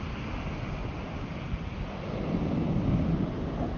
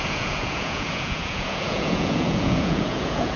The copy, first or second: second